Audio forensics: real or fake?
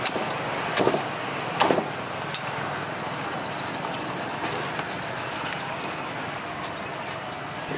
real